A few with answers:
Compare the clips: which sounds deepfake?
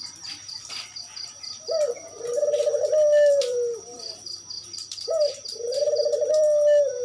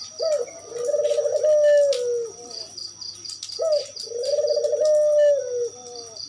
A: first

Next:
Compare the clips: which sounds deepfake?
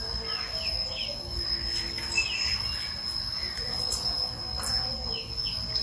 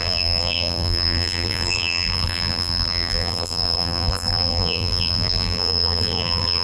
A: second